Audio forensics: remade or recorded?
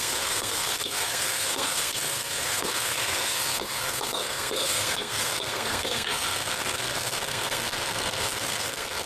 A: remade